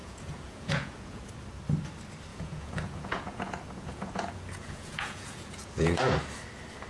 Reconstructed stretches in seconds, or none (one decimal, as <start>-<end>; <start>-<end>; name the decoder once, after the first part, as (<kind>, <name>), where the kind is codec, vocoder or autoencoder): 0.0-1.3 (vocoder, Vocos); 2.3-6.0